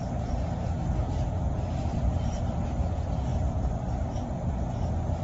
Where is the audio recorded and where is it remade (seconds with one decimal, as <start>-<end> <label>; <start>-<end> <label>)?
0.0-3.3 recorded; 3.3-4.5 remade; 4.5-5.2 recorded